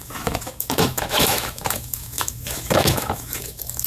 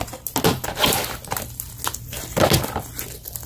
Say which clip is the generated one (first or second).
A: first